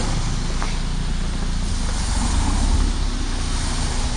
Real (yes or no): yes